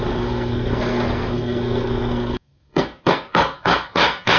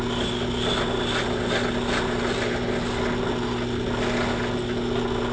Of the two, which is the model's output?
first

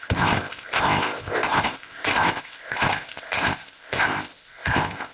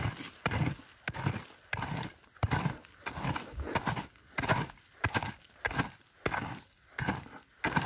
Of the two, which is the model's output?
first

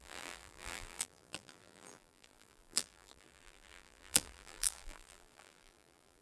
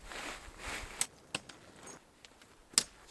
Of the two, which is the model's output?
first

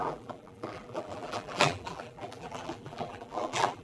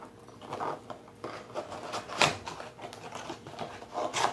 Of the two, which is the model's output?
first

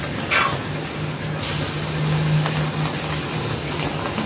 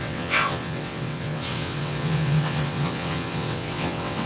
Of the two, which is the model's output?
second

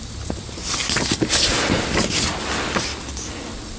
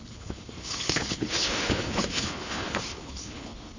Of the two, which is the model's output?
second